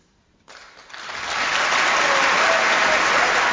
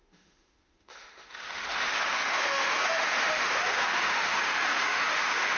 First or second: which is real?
first